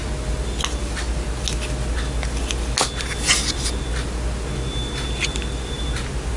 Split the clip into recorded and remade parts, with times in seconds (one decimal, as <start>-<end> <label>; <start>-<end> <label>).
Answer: 0.0-6.4 recorded